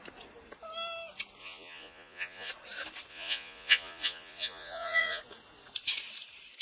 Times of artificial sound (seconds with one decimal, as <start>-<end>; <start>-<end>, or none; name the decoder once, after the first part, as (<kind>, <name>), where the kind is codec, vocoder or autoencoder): 1.4-2.5 (vocoder, Vocos); 3.1-5.2